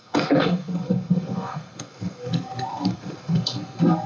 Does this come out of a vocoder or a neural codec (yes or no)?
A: yes